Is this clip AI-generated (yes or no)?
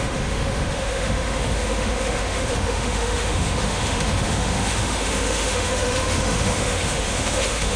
yes